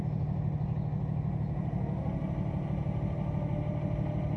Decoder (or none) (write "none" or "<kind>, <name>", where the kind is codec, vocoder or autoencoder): none